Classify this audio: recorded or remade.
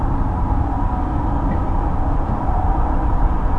remade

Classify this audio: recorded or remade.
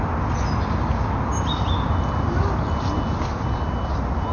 recorded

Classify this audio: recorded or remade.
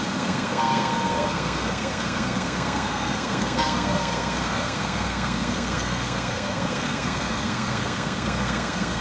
remade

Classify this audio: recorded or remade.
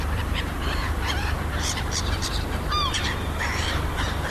remade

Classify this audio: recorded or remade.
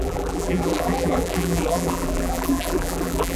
remade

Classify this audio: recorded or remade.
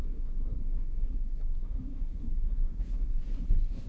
remade